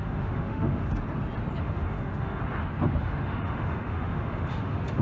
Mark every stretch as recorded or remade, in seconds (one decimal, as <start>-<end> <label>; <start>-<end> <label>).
0.0-0.8 remade; 0.8-1.6 recorded; 1.6-2.4 remade; 2.4-3.0 recorded; 3.0-5.0 remade